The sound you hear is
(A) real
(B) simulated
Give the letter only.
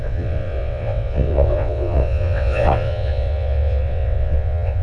B